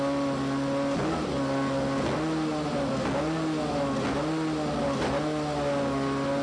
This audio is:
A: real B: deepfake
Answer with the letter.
A